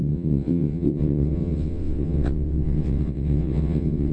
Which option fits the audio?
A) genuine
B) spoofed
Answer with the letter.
B